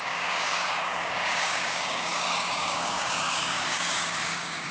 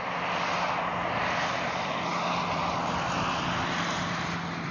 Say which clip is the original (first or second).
second